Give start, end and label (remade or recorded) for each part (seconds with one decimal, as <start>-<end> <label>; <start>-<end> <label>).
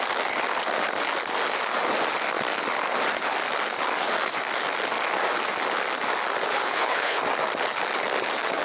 0.0-6.5 recorded; 6.5-7.2 remade; 7.2-8.6 recorded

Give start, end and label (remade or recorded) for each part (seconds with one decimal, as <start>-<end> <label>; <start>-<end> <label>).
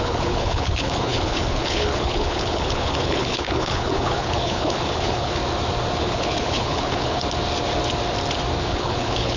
0.0-5.4 remade; 5.4-6.0 recorded; 6.0-7.2 remade; 7.2-8.6 recorded; 8.6-9.4 remade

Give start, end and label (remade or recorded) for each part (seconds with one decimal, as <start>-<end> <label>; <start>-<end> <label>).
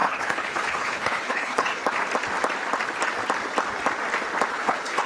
0.0-1.8 remade; 1.8-4.5 recorded; 4.5-5.1 remade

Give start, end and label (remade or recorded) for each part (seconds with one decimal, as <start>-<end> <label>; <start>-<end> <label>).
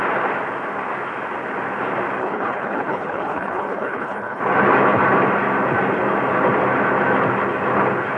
0.0-2.2 recorded; 2.2-4.4 remade; 4.4-8.2 recorded